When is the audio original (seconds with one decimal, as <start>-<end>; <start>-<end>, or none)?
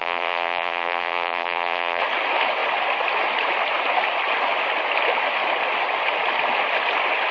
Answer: 2.0-7.3